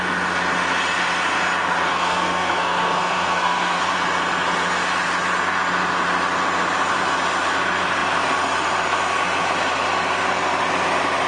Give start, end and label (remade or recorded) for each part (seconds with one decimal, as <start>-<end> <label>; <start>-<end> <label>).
0.0-1.9 recorded; 1.9-3.8 remade; 3.8-11.3 recorded